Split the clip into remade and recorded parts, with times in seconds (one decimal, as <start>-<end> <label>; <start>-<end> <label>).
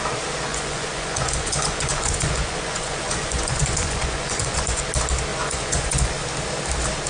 0.0-0.5 recorded; 0.5-4.8 remade; 4.8-5.3 recorded; 5.3-6.1 remade; 6.1-7.1 recorded